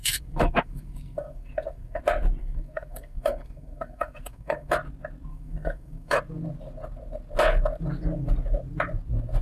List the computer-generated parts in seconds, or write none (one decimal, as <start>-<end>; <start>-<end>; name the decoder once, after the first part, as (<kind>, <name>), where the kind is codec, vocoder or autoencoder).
0.0-2.0 (codec, SNAC); 2.4-4.7; 5.3-6.2